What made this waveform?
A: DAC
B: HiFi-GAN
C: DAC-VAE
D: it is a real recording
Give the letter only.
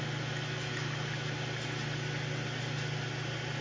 D